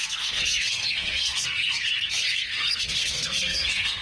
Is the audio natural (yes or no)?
no